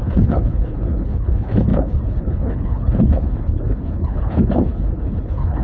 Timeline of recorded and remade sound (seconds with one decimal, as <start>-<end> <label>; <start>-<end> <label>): 0.0-5.6 remade